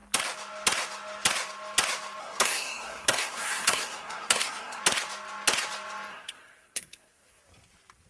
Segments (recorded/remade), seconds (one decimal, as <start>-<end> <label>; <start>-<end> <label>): 0.0-2.2 recorded; 2.2-4.8 remade; 4.8-6.1 recorded; 6.1-7.4 remade; 7.4-8.1 recorded